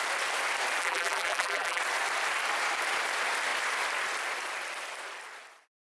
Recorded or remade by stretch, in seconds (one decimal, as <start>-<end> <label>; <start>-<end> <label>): 0.0-0.8 recorded; 0.8-1.8 remade; 1.8-5.8 recorded